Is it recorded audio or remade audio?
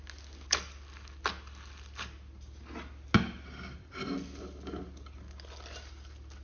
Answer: recorded